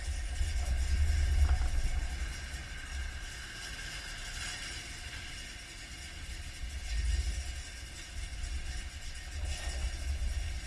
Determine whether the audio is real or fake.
real